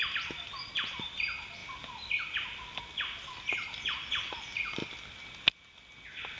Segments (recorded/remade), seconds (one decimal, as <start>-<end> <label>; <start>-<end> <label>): 0.0-6.4 recorded